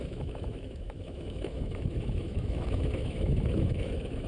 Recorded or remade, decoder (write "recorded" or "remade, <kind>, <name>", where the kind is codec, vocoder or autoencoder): remade, autoencoder, DAC-VAE